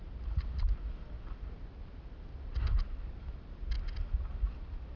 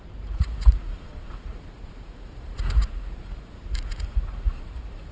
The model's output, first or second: second